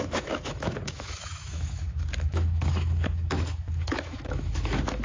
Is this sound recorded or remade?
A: remade